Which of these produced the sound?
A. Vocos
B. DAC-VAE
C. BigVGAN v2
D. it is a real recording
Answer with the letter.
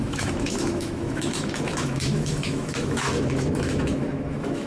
B